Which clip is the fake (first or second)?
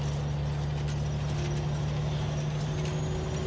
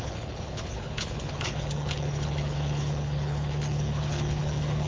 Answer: second